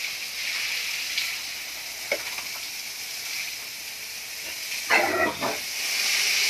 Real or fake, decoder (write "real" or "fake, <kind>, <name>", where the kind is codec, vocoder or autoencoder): real